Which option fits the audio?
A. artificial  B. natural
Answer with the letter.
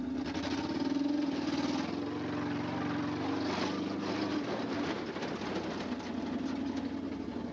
B